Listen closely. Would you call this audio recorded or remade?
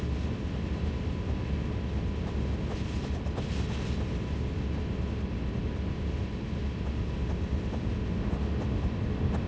recorded